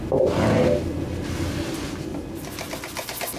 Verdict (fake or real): real